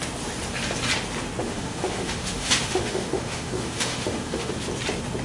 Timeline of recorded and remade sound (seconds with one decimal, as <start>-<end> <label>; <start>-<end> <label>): 0.0-1.4 recorded; 1.4-4.5 remade; 4.5-5.2 recorded